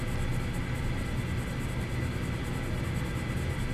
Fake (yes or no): no